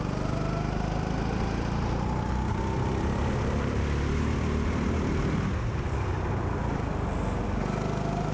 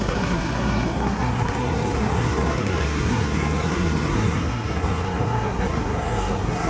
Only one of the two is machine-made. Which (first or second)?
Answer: second